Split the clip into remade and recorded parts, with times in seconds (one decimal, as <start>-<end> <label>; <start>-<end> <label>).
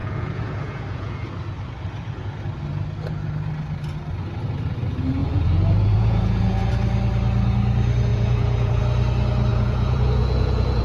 0.0-1.3 remade; 1.3-5.2 recorded; 5.2-6.7 remade; 6.7-8.1 recorded; 8.1-8.8 remade; 8.8-9.5 recorded; 9.5-10.8 remade